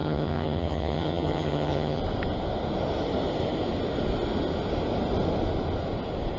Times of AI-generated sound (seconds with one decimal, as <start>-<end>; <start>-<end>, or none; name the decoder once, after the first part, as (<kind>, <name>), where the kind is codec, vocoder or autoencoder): 0.0-2.0 (vocoder, HiFi-GAN)